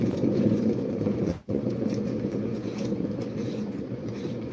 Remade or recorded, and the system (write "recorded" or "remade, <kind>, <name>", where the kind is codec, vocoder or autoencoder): remade, vocoder, Vocos